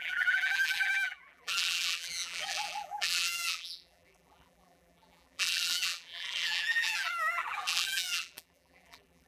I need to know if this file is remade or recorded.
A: remade